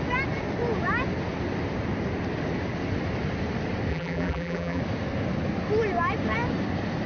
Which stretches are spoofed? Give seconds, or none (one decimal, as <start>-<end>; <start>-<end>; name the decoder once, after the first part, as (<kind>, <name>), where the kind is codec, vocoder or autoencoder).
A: 3.9-4.8 (vocoder, BigVGAN v2)